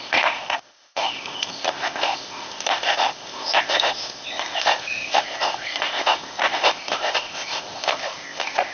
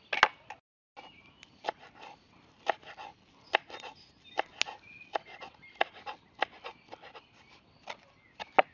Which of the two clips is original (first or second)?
second